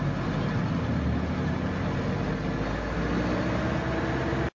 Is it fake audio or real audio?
real